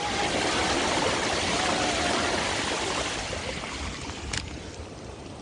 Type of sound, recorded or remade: recorded